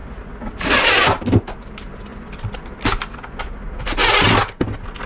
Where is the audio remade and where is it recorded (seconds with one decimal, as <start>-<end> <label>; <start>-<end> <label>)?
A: 0.0-5.1 recorded